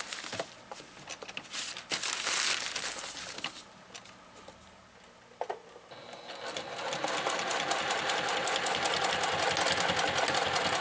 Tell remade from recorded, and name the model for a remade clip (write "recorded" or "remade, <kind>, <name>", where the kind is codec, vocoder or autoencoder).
recorded